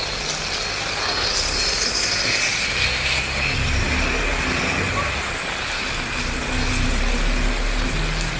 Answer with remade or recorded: recorded